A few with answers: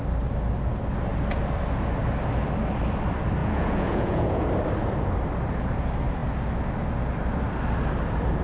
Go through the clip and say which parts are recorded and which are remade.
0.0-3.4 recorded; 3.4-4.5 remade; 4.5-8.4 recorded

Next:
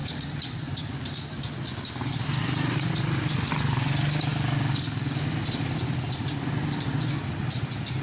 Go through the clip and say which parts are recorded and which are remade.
0.0-8.0 recorded

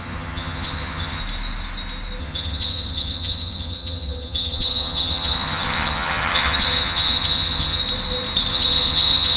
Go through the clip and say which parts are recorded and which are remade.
0.0-1.2 remade; 1.2-2.2 recorded; 2.2-7.8 remade; 7.8-8.5 recorded; 8.5-9.4 remade

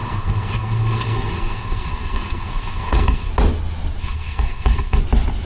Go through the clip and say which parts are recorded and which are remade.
0.0-3.3 remade; 3.3-4.0 recorded; 4.0-5.0 remade; 5.0-5.5 recorded